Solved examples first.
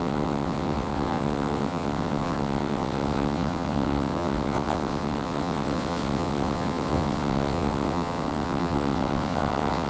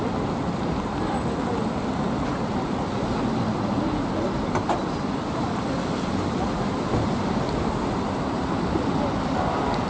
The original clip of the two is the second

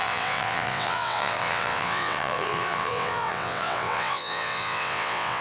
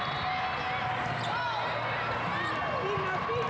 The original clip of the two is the second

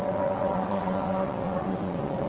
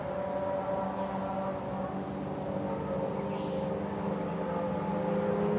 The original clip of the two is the second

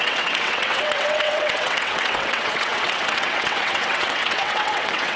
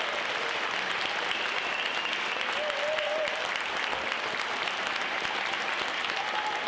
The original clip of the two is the second